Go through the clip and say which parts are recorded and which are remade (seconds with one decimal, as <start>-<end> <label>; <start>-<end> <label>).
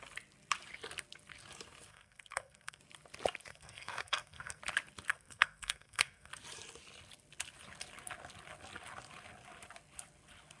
0.0-1.9 recorded; 1.9-2.8 remade; 2.8-3.5 recorded; 3.5-4.6 remade; 4.6-5.1 recorded; 5.1-6.3 remade; 6.3-10.6 recorded